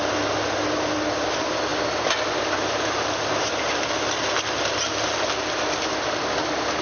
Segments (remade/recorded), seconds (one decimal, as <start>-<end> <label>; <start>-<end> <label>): 0.0-6.8 recorded